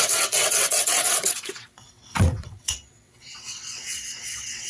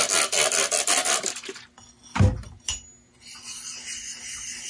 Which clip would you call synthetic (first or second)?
first